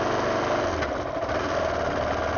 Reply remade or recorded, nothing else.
recorded